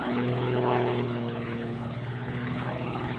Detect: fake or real fake